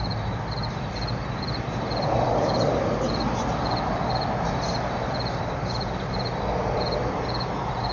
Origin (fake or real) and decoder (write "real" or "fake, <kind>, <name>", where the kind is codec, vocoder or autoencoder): real